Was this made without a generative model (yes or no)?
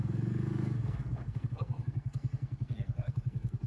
no